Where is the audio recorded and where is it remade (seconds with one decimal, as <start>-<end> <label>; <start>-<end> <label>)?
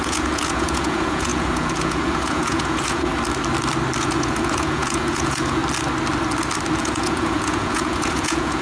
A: 0.0-3.1 remade; 3.1-4.0 recorded; 4.0-5.6 remade; 5.6-6.8 recorded; 6.8-8.6 remade